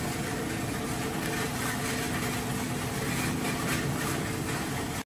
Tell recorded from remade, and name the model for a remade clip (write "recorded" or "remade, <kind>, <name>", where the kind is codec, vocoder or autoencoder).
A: recorded